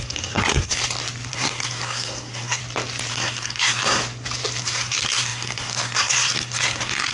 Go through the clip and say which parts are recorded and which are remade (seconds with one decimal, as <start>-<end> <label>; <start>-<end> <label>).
0.0-0.8 remade; 0.8-1.3 recorded; 1.3-2.6 remade; 2.6-3.1 recorded; 3.1-4.0 remade; 4.0-4.6 recorded; 4.6-7.1 remade